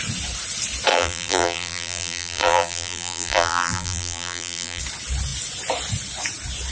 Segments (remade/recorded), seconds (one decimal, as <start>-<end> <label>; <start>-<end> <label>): 0.0-0.9 recorded; 0.9-4.8 remade; 4.8-6.7 recorded